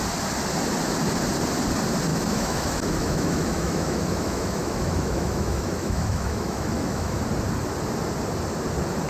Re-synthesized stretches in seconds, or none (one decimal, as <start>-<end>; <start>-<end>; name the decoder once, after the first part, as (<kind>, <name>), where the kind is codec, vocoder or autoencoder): 2.1-7.2 (autoencoder, DAC-VAE)